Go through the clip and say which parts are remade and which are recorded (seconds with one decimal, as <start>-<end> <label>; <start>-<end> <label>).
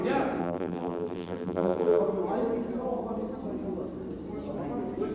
0.0-0.4 recorded; 0.4-2.0 remade; 2.0-5.1 recorded